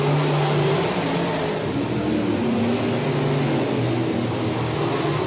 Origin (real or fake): real